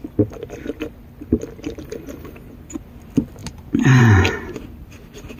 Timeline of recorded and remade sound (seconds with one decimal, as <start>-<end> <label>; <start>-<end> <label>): 0.0-5.4 recorded